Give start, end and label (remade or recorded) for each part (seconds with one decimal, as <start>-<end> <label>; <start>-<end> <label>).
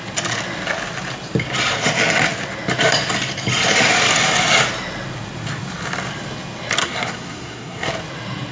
0.0-6.8 recorded; 6.8-7.9 remade; 7.9-8.5 recorded